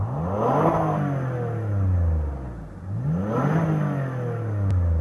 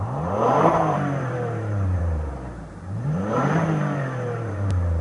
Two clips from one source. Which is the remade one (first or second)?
second